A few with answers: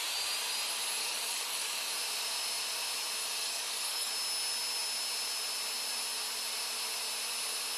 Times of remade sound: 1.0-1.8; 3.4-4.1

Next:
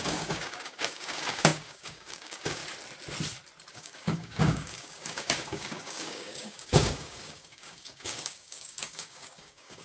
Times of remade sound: 0.0-2.6; 3.7-9.8

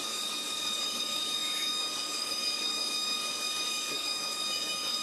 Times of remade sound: 0.0-5.0